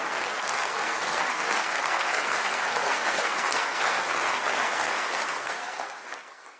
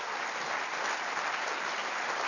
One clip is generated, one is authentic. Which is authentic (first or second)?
second